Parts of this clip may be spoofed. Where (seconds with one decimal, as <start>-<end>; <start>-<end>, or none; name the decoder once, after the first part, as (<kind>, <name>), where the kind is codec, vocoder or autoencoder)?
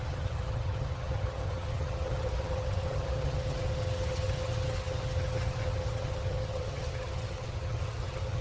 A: 0.0-8.4 (vocoder, HiFi-GAN)